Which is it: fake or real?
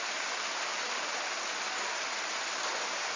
real